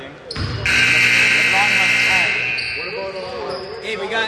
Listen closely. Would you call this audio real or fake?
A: real